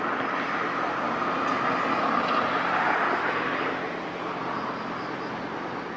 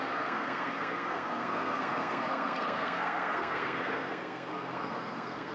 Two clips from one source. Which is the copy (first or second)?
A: second